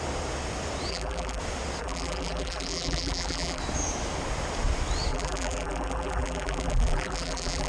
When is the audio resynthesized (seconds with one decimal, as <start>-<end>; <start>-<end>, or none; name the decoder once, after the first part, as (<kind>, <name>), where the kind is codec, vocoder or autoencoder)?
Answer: 0.9-1.4 (vocoder, BigVGAN v2); 1.8-3.6; 5.1-7.7